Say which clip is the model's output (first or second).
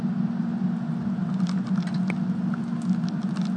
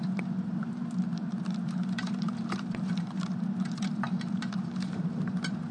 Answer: second